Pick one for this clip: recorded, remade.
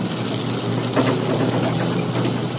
recorded